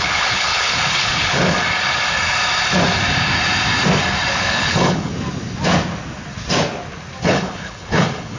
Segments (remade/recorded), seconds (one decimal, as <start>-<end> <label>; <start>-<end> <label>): 0.0-1.4 remade; 1.4-4.3 recorded; 4.3-5.1 remade; 5.1-7.2 recorded; 7.2-8.4 remade